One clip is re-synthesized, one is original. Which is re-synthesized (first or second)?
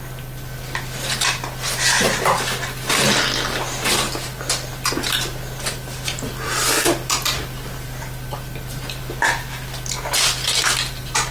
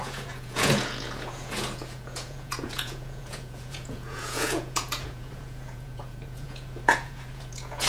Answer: second